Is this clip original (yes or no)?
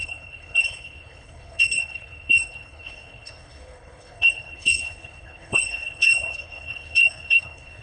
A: no